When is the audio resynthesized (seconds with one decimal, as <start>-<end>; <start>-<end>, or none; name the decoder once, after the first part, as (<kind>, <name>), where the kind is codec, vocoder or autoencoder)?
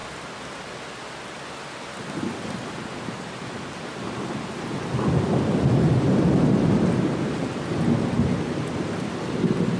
none